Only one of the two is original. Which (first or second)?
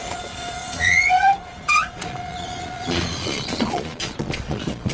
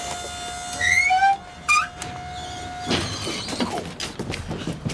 second